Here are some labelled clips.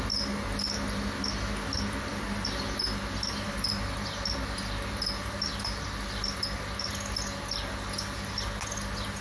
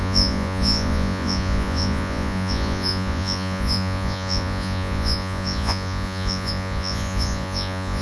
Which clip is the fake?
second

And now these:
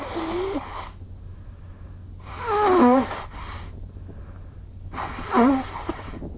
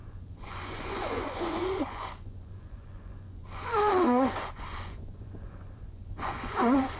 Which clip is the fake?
second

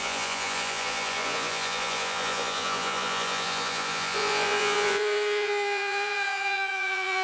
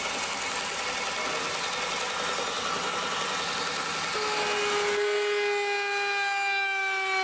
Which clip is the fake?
first